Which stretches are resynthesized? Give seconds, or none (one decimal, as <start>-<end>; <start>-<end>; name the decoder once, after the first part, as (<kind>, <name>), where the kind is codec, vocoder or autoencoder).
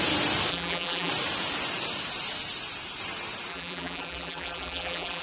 0.5-1.1 (vocoder, BigVGAN v2); 3.5-5.2